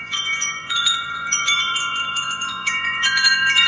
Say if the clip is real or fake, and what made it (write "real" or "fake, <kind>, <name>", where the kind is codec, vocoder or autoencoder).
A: fake, vocoder, Vocos